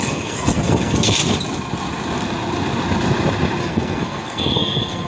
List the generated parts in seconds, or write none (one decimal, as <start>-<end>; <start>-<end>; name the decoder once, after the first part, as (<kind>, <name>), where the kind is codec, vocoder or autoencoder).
0.0-1.2 (codec, SNAC); 3.6-5.1